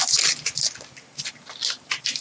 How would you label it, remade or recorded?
recorded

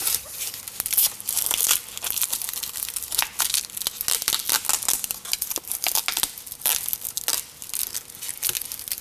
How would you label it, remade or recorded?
recorded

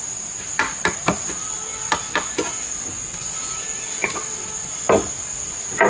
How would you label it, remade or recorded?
recorded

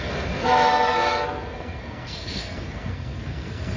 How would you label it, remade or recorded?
remade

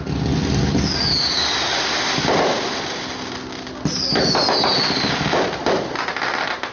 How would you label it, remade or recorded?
recorded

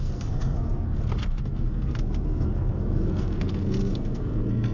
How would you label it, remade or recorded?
remade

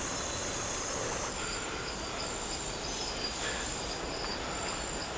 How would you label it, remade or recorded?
recorded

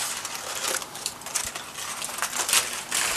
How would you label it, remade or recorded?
recorded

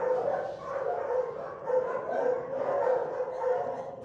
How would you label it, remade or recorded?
recorded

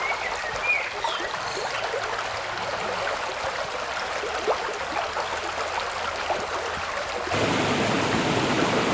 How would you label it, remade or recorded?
recorded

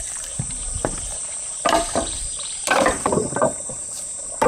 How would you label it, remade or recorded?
remade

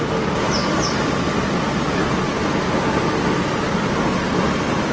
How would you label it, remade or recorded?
recorded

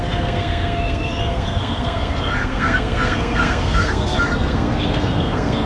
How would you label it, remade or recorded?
remade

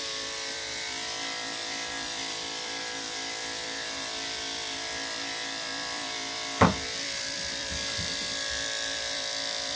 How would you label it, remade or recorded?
remade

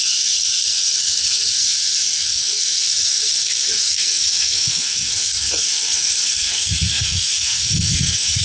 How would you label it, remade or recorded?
remade